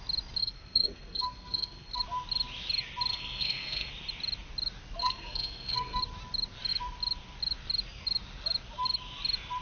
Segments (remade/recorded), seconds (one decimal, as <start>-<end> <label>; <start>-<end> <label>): 0.0-0.4 recorded; 0.4-2.0 remade; 2.0-3.1 recorded; 3.1-3.9 remade; 3.9-5.0 recorded; 5.0-6.0 remade; 6.0-9.6 recorded